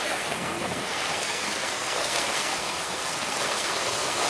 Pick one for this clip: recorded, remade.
remade